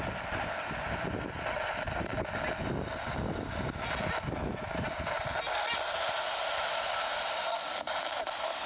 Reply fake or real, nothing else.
real